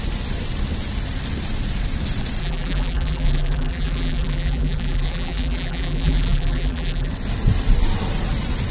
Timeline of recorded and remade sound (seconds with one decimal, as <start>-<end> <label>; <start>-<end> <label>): 0.0-2.4 recorded; 2.4-7.1 remade; 7.1-8.7 recorded